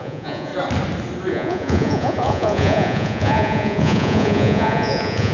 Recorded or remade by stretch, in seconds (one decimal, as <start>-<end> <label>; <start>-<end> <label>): 0.0-0.5 remade; 0.5-1.3 recorded; 1.3-5.3 remade